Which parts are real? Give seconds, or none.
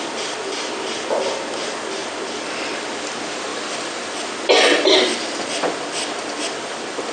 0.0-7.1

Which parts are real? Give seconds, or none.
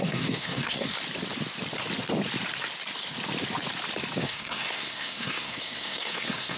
0.9-4.2